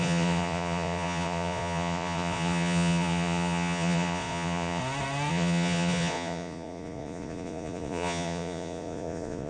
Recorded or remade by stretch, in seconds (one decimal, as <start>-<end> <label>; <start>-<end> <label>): 0.0-4.8 remade; 4.8-5.3 recorded; 5.3-9.5 remade